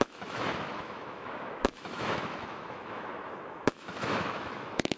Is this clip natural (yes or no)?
no